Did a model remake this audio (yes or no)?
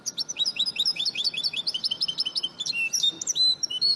yes